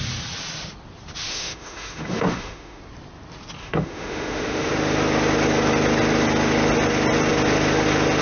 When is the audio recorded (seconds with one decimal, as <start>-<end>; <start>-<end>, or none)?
0.0-1.3; 2.8-3.6; 4.7-8.2